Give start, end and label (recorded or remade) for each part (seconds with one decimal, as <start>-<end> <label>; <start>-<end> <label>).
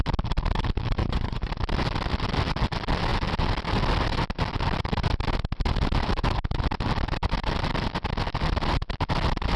0.0-1.0 recorded; 1.0-1.5 remade; 1.5-9.6 recorded